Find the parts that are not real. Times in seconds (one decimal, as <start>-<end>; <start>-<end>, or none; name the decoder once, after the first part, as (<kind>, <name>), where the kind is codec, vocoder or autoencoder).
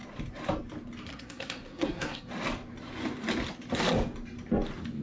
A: 1.1-2.3 (codec, SNAC)